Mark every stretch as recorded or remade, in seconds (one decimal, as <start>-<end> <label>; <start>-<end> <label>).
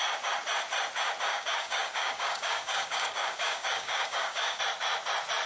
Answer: 0.0-1.3 recorded; 1.3-4.6 remade; 4.6-5.5 recorded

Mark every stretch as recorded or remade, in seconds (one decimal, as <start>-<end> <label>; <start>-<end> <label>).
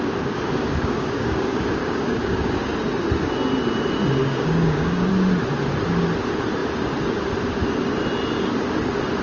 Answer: 0.0-0.6 recorded; 0.6-2.7 remade; 2.7-4.2 recorded; 4.2-5.1 remade; 5.1-9.2 recorded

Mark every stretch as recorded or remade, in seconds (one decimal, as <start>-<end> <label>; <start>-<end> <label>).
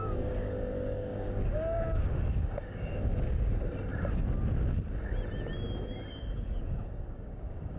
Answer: 0.0-3.5 remade; 3.5-6.1 recorded; 6.1-7.8 remade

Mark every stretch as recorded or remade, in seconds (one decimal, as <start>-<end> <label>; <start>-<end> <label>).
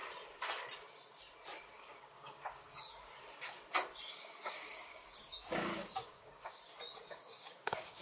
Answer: 0.0-1.7 recorded; 1.7-3.1 remade; 3.1-4.1 recorded; 4.1-6.6 remade; 6.6-7.1 recorded; 7.1-8.0 remade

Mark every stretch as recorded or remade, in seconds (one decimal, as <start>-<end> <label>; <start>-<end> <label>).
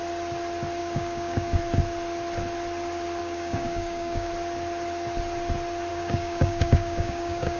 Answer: 0.0-0.8 recorded; 0.8-1.6 remade; 1.6-3.2 recorded; 3.2-4.3 remade; 4.3-5.9 recorded; 5.9-7.6 remade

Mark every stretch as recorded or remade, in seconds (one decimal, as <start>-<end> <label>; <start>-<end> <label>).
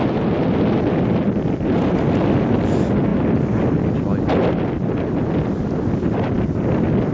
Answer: 0.0-7.1 recorded